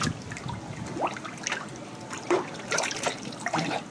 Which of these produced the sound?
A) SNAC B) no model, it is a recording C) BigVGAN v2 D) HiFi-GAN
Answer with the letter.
B